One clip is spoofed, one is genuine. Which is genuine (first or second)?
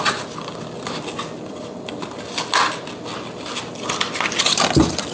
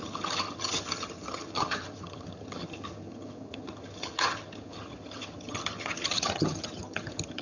first